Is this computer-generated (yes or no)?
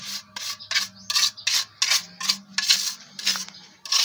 no